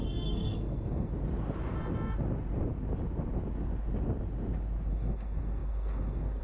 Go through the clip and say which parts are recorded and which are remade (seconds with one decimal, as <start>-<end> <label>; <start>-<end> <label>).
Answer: 0.0-1.1 remade; 1.1-4.9 recorded; 4.9-6.4 remade